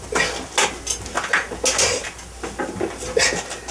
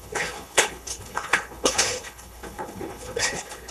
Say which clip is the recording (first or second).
first